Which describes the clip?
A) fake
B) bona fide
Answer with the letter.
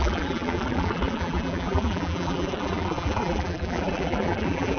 A